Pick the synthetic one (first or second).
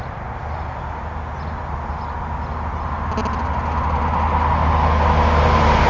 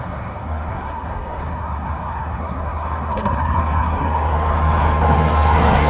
second